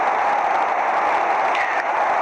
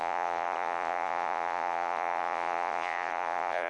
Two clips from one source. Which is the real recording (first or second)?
first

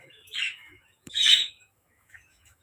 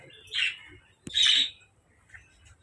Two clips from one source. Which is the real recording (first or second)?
second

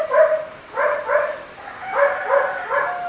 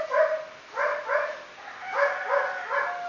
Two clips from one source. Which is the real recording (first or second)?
second